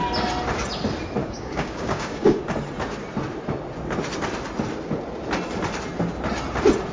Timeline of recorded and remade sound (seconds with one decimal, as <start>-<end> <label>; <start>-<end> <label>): 0.0-1.2 recorded; 1.2-2.4 remade; 2.4-6.9 recorded

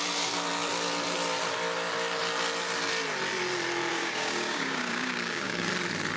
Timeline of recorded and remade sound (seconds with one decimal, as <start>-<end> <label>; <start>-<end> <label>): 0.0-3.9 recorded; 3.9-5.7 remade; 5.7-6.2 recorded

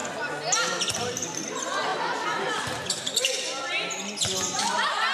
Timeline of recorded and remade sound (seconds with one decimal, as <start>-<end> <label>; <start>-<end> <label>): 0.0-5.1 recorded

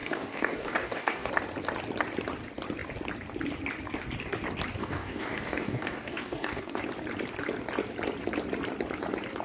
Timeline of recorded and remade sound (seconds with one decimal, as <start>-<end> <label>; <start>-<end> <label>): 0.0-1.3 remade; 1.3-4.8 recorded; 4.8-6.8 remade; 6.8-9.4 recorded

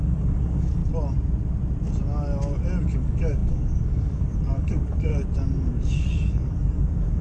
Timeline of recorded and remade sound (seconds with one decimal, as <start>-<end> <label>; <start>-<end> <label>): 0.0-0.8 remade; 0.8-2.8 recorded; 2.8-5.1 remade; 5.1-5.7 recorded; 5.7-7.2 remade

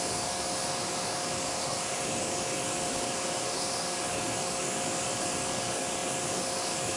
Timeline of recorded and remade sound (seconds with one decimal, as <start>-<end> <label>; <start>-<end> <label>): 0.0-7.0 remade

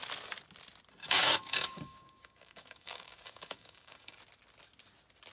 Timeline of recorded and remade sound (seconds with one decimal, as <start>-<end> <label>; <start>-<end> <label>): 0.0-1.0 recorded; 1.0-4.2 remade; 4.2-5.3 recorded